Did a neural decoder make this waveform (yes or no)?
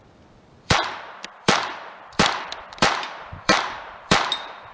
yes